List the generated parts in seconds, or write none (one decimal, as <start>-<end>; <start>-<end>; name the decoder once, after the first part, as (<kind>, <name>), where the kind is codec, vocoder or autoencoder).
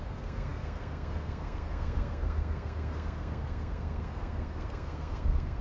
0.0-5.6 (codec, SNAC)